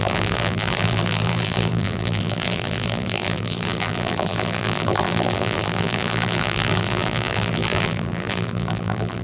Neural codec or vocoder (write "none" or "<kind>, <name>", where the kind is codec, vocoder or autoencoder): vocoder, BigVGAN v2